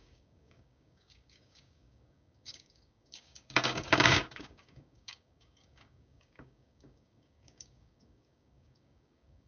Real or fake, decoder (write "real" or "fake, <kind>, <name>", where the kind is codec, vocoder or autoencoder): fake, codec, DAC